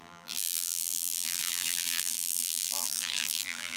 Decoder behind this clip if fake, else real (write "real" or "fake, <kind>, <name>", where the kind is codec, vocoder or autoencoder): fake, vocoder, BigVGAN v2